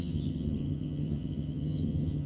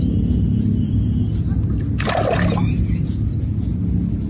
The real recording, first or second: second